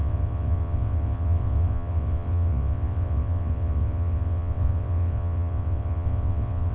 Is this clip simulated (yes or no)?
yes